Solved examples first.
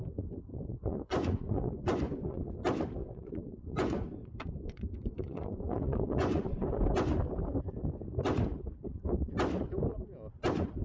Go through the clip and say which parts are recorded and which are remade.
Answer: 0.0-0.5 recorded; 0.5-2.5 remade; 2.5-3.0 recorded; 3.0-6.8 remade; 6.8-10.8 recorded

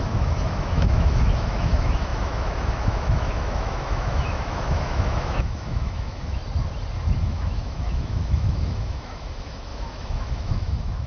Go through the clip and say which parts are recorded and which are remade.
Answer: 0.0-6.4 remade; 6.4-7.2 recorded; 7.2-11.1 remade

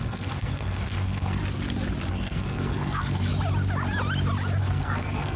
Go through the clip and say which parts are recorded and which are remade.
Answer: 0.0-1.4 remade; 1.4-2.1 recorded; 2.1-3.3 remade; 3.3-4.6 recorded; 4.6-5.4 remade

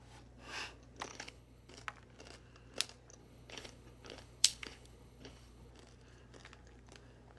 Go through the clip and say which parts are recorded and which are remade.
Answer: 0.0-1.1 recorded; 1.1-1.7 remade; 1.7-3.2 recorded; 3.2-5.7 remade; 5.7-7.4 recorded

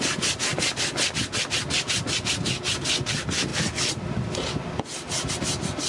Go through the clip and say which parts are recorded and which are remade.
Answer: 0.0-5.9 recorded

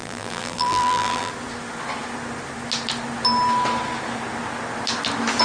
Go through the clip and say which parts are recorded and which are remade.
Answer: 0.0-1.3 remade; 1.3-5.4 recorded